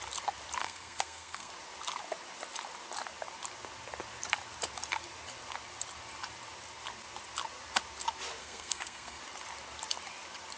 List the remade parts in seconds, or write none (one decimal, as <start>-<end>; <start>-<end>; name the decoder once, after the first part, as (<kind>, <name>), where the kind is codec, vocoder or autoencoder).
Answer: 0.6-1.5 (codec, SNAC); 8.4-9.2